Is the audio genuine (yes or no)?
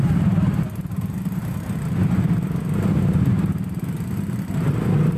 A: yes